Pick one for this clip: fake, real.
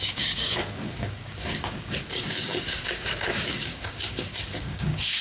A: fake